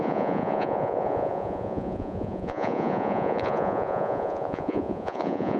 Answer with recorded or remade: remade